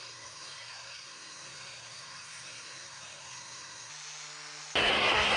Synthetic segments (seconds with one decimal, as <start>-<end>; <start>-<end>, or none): 0.0-3.9; 4.8-5.4